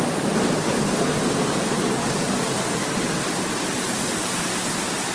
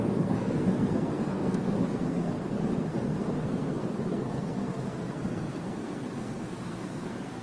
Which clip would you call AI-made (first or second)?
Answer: second